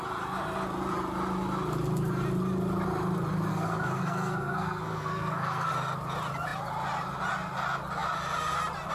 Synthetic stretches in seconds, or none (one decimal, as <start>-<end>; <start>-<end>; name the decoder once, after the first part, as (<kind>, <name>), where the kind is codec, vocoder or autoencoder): 3.5-5.7 (codec, SNAC)